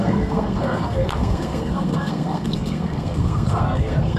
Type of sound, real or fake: fake